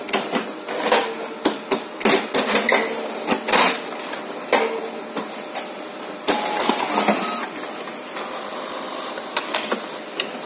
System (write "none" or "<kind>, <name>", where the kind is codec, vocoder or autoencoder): none